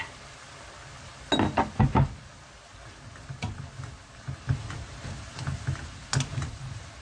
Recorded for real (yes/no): yes